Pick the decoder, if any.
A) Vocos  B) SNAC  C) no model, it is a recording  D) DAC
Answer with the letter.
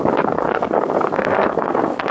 B